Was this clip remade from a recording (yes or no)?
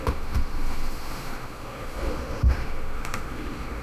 yes